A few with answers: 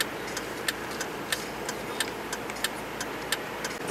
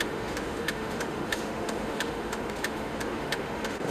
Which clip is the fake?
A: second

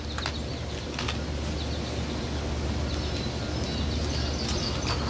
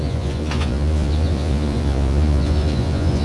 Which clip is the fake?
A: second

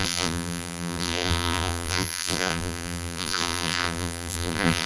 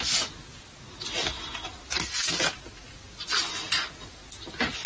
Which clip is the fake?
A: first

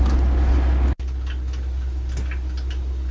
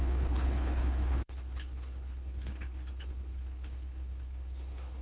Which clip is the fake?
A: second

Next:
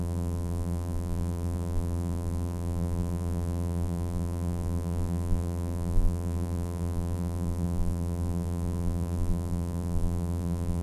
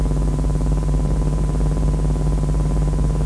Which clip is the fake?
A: first